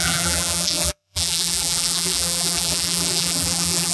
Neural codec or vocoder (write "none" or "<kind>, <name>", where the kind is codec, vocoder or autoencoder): vocoder, BigVGAN v2